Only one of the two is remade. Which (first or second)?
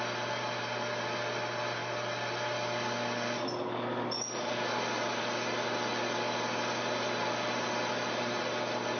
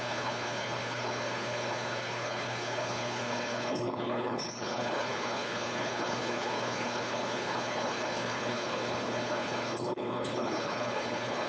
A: second